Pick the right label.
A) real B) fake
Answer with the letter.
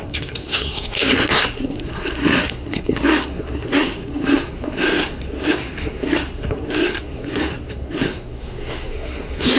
B